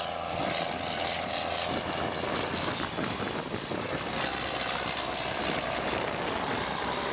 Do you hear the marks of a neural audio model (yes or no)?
no